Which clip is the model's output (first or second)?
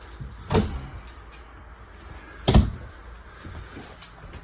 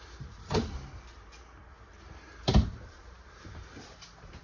second